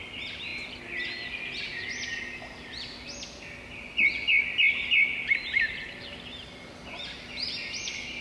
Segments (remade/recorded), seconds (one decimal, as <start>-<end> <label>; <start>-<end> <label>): 0.0-8.2 recorded